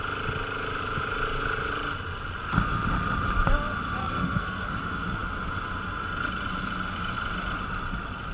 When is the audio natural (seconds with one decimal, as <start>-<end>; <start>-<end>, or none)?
0.0-4.0; 4.8-8.3